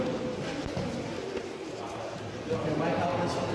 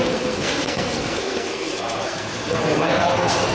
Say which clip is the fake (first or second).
second